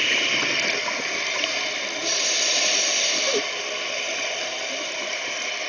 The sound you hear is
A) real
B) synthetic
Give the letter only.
B